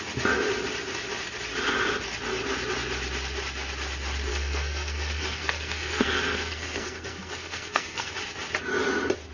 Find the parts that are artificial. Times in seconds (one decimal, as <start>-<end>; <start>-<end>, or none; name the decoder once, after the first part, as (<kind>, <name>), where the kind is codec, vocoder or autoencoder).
4.3-8.1 (codec, SNAC)